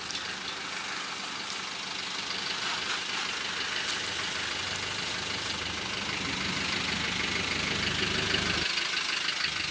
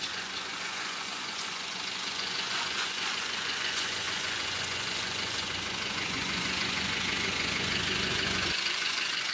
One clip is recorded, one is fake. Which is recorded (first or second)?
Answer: first